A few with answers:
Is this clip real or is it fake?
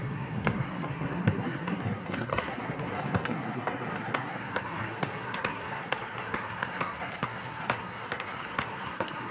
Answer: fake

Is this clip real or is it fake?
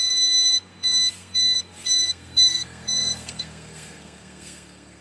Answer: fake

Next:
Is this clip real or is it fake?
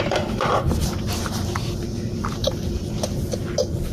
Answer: real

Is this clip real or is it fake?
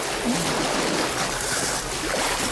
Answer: real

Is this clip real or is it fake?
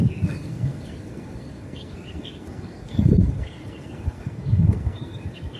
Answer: fake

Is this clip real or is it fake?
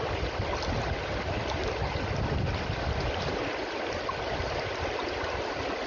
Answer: real